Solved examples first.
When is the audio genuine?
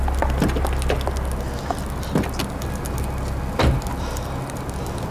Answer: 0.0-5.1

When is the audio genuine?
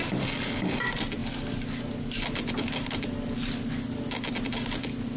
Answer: 0.0-5.2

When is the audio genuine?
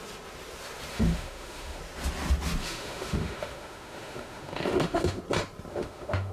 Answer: 0.0-0.9; 1.8-2.6; 5.2-5.7